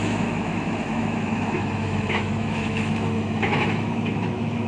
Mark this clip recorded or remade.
remade